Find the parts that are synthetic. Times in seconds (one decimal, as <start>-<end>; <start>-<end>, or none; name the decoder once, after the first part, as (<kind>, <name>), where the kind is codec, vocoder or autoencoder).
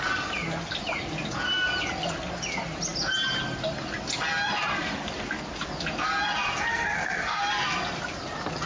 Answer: 6.7-7.4 (codec, SNAC)